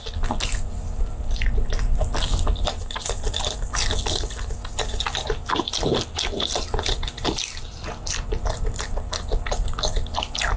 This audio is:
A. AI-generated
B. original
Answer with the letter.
B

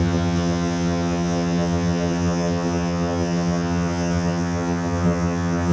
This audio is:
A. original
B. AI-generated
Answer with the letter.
B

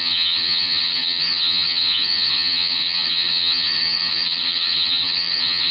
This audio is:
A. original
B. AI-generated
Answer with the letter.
B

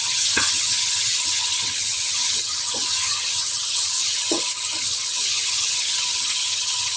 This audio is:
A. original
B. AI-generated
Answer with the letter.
B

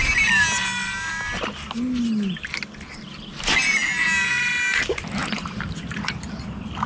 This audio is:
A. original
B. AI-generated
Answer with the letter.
A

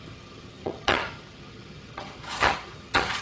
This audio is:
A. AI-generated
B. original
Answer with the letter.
A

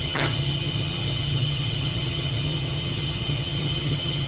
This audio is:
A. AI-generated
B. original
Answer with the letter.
A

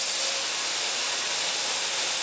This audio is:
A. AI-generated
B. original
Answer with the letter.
B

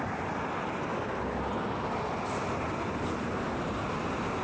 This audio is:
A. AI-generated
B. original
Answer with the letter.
B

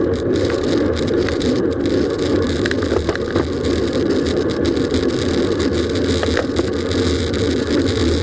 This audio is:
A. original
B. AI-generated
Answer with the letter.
A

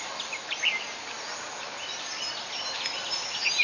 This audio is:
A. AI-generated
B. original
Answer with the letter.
B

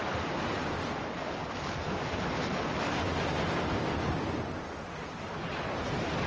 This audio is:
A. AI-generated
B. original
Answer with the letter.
B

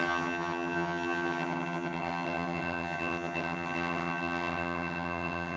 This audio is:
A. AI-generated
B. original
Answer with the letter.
A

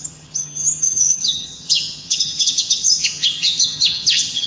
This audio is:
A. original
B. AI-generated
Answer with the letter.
B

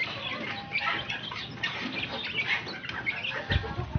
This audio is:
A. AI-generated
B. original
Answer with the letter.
B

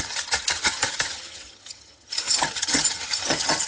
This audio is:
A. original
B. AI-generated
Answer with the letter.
B